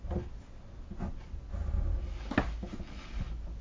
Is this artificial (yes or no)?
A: no